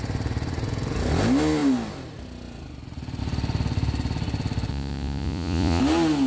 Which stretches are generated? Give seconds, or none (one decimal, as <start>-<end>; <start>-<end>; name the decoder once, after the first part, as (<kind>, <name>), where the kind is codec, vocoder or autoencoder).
4.7-5.8 (vocoder, Vocos)